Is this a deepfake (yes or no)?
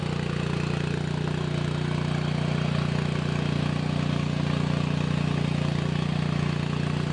no